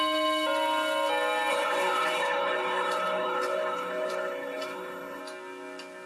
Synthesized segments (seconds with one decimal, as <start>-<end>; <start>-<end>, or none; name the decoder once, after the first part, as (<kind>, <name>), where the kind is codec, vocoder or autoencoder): 1.5-5.2 (codec, HILCodec)